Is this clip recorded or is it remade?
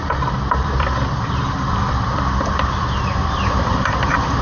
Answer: remade